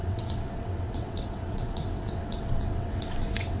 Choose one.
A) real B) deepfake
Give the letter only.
B